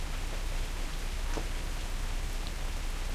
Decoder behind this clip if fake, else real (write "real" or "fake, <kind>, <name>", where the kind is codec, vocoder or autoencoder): real